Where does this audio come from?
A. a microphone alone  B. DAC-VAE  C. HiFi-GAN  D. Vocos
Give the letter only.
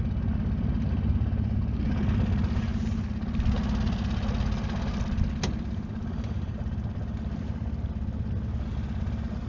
A